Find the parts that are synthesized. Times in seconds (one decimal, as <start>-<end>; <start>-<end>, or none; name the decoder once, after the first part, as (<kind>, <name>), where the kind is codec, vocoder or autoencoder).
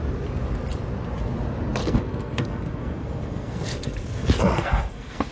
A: 1.8-5.3 (codec, SNAC)